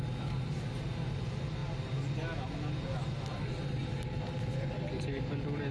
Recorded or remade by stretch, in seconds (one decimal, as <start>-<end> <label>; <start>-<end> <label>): 0.0-5.7 recorded